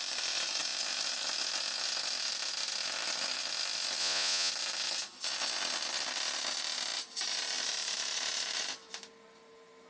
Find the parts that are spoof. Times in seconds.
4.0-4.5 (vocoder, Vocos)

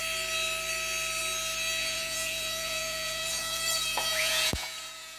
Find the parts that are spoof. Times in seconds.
1.8-5.2 (vocoder, Vocos)

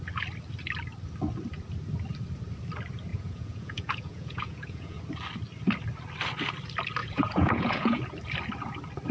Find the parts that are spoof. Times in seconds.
3.1-5.0 (vocoder, Vocos); 7.0-8.0

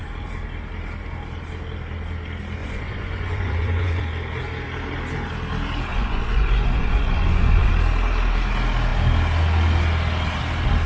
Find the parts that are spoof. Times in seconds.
2.6-4.0 (vocoder, Vocos); 5.9-7.7

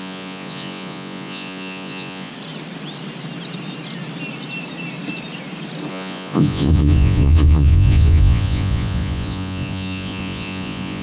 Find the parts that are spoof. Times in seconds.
0.0-2.3 (vocoder, Vocos); 5.9-11.0

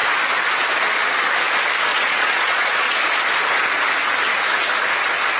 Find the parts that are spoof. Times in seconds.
1.9-3.0 (vocoder, Vocos)

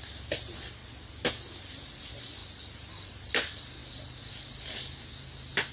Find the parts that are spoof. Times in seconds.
none